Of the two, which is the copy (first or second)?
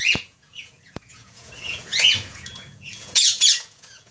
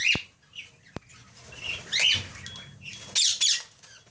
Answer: first